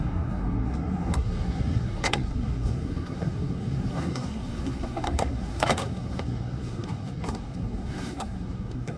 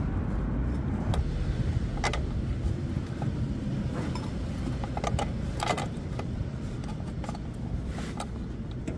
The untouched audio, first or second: second